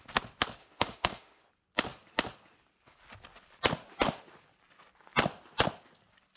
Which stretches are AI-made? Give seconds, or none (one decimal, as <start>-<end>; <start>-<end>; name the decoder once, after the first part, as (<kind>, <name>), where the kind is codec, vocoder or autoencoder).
0.6-1.4 (autoencoder, DAC-VAE)